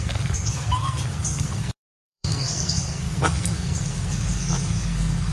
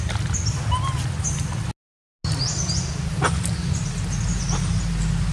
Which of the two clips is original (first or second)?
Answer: second